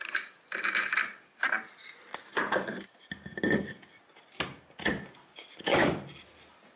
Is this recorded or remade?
recorded